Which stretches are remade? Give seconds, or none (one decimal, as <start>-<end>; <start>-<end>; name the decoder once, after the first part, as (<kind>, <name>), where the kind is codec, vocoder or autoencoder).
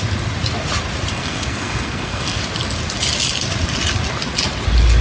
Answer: 1.1-2.4 (codec, SNAC)